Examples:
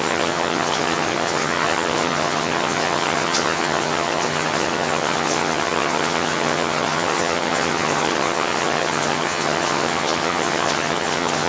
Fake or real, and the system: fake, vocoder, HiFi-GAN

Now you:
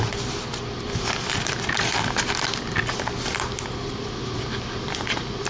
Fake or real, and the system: real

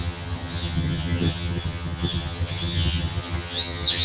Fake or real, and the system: fake, vocoder, HiFi-GAN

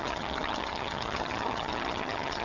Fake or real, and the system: fake, vocoder, HiFi-GAN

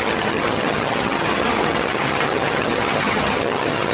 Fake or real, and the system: fake, vocoder, HiFi-GAN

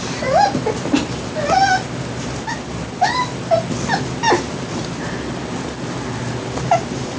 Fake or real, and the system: real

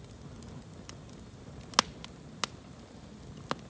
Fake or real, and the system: real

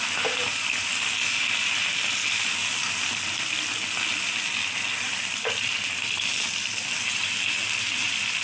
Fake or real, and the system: real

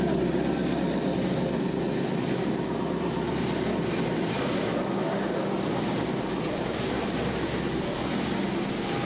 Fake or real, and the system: real